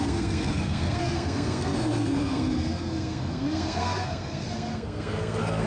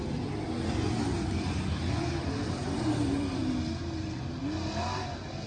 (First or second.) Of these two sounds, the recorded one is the second